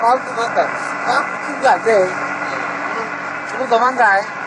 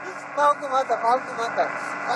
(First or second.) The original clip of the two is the second